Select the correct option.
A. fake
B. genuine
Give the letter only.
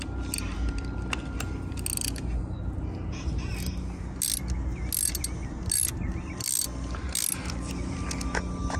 B